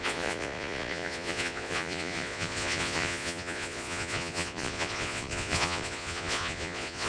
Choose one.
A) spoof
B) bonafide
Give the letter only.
A